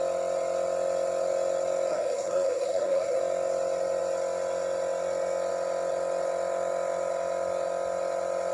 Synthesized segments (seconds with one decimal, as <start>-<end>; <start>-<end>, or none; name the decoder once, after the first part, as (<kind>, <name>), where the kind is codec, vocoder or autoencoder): 1.9-3.2 (codec, SNAC)